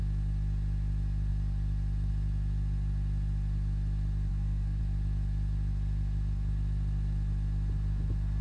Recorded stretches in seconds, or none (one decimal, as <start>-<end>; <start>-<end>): 0.0-4.3; 4.8-8.4